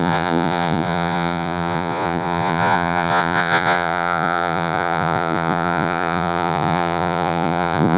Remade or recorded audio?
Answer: remade